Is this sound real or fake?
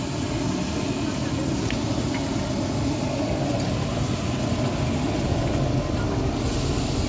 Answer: real